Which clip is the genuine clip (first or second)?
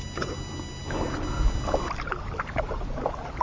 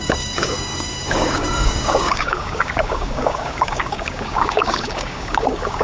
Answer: first